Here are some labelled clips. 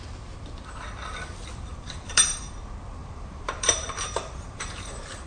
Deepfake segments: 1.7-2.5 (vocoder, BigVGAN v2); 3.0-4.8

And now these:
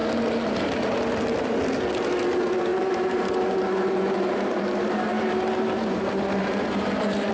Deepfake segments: 2.7-7.3 (vocoder, BigVGAN v2)

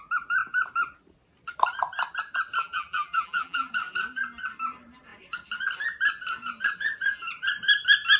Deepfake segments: 2.6-3.7 (vocoder, BigVGAN v2)

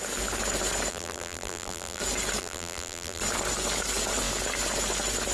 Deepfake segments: 0.9-2.0 (vocoder, BigVGAN v2); 2.4-3.2